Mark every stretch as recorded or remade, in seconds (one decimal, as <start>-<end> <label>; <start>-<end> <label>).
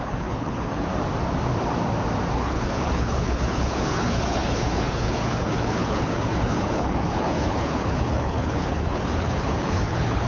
0.0-0.9 remade; 0.9-2.3 recorded; 2.3-10.3 remade